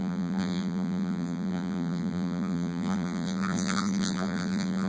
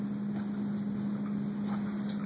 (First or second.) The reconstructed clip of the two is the first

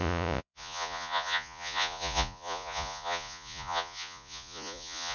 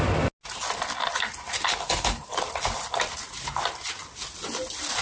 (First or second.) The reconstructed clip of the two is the first